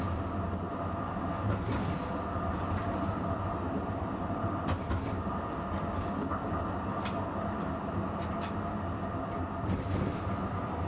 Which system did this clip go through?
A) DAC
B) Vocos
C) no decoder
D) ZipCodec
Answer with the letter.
C